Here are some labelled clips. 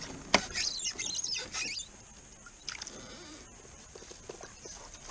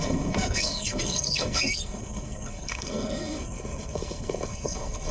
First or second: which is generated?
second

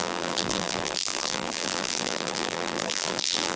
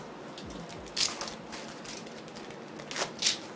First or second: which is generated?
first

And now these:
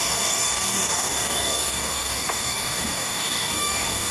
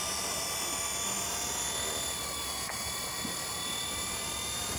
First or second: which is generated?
first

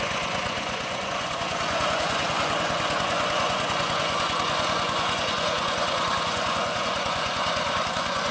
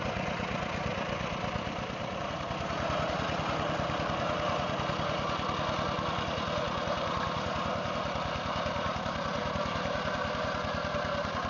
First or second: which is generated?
first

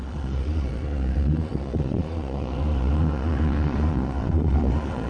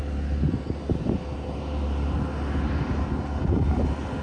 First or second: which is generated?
first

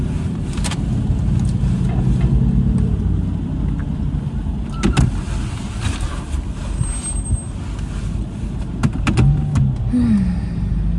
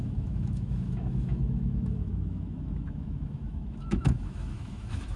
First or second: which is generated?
second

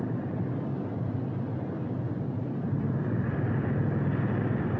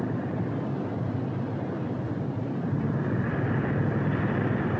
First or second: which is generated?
second